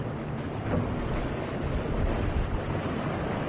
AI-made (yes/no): no